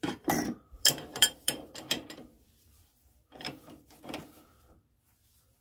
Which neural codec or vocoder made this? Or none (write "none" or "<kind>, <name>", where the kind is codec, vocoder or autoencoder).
vocoder, BigVGAN v2